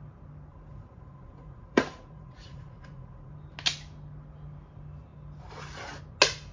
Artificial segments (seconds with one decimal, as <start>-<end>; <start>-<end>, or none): 0.5-3.3